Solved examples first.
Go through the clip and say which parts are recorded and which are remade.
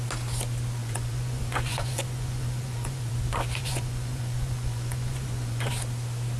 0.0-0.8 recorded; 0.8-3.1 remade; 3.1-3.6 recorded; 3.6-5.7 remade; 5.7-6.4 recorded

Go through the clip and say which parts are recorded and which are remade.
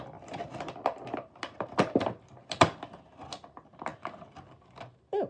0.0-5.3 recorded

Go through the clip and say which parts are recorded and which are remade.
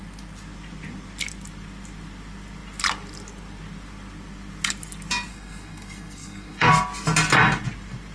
0.0-5.3 recorded; 5.3-6.7 remade; 6.7-8.1 recorded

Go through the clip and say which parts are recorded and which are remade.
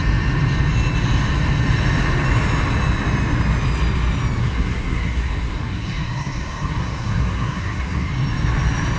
0.0-4.4 recorded; 4.4-8.1 remade; 8.1-9.0 recorded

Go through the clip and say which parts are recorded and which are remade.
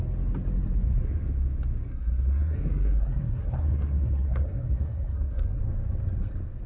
0.0-1.9 recorded; 1.9-5.6 remade; 5.6-6.7 recorded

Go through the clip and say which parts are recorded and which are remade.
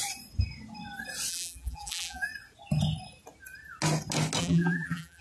0.0-1.3 recorded; 1.3-2.3 remade; 2.3-4.4 recorded; 4.4-5.2 remade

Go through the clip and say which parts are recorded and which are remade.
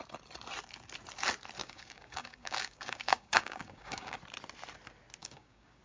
0.0-1.6 recorded; 1.6-4.2 remade; 4.2-5.2 recorded; 5.2-5.8 remade